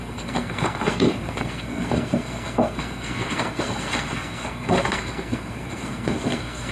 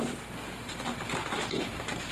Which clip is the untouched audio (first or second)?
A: second